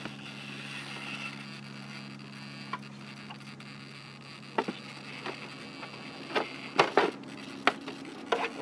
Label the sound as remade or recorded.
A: recorded